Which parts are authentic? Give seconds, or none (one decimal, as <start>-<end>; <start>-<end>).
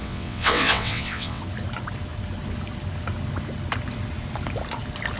1.4-5.2